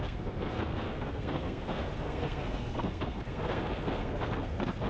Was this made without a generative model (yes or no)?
no